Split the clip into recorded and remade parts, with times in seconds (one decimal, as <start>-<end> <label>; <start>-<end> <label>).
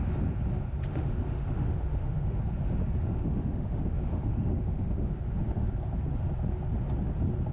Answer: 0.0-0.9 recorded; 0.9-2.4 remade; 2.4-3.1 recorded; 3.1-5.7 remade; 5.7-7.5 recorded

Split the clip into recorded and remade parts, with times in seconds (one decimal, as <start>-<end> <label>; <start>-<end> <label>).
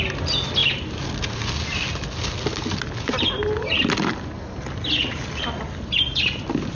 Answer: 0.0-6.7 recorded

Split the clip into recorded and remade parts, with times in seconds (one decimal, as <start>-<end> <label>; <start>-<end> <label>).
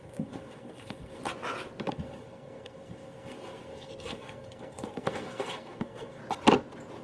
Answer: 0.0-1.2 remade; 1.2-1.9 recorded; 1.9-6.2 remade; 6.2-7.0 recorded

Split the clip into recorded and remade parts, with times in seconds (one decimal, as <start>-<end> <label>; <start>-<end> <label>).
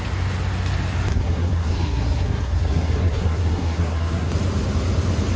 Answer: 0.0-1.1 recorded; 1.1-4.3 remade; 4.3-5.4 recorded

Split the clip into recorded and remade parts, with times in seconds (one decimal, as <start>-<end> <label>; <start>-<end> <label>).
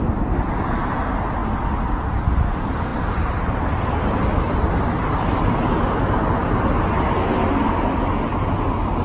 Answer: 0.0-9.0 recorded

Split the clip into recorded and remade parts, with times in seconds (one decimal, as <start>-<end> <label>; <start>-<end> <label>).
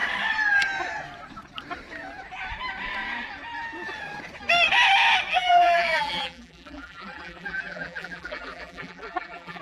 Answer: 0.0-5.3 recorded; 5.3-9.6 remade